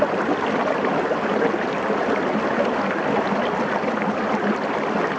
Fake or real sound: real